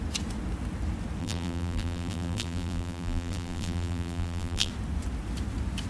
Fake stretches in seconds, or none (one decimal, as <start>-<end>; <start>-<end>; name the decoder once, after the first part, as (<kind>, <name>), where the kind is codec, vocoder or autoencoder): 1.2-4.7 (vocoder, BigVGAN v2)

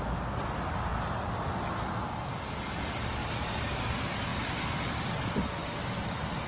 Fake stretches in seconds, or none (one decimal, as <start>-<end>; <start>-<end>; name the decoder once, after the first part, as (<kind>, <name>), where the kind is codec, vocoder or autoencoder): 3.2-3.8 (vocoder, BigVGAN v2); 5.6-6.5

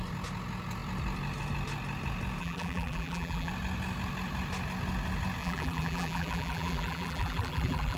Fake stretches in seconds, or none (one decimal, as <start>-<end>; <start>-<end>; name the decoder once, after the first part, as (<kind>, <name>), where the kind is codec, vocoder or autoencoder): 2.4-3.5 (vocoder, BigVGAN v2); 5.4-8.0

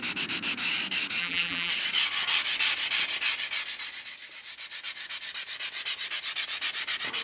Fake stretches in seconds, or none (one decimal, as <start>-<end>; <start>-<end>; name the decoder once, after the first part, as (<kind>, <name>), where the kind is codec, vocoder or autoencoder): 1.2-1.7 (vocoder, BigVGAN v2)

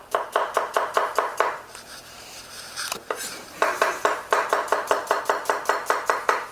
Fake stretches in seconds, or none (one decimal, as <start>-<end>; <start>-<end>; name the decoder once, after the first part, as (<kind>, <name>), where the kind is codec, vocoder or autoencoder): 1.3-5.2 (vocoder, BigVGAN v2)

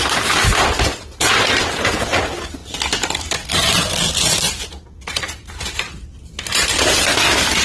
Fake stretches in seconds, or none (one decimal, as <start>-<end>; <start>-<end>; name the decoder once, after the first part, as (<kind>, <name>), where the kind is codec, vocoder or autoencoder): none

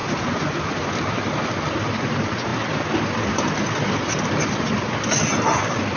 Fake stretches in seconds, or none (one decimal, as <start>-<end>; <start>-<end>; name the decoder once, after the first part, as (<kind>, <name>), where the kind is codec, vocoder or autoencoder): 0.0-1.2 (vocoder, BigVGAN v2)